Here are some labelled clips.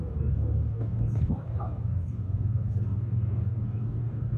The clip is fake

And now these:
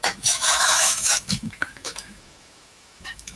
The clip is fake